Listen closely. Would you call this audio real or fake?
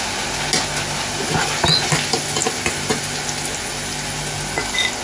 real